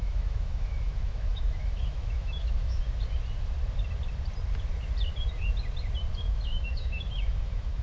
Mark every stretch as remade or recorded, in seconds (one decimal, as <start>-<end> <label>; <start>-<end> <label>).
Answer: 0.0-2.8 remade; 2.8-6.2 recorded; 6.2-7.8 remade